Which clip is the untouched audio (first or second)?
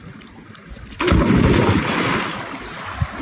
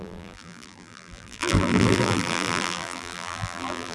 first